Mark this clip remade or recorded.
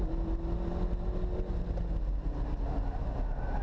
recorded